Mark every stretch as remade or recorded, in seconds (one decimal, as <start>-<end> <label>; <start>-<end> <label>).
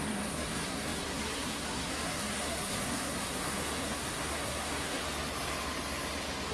0.0-5.0 remade; 5.0-6.5 recorded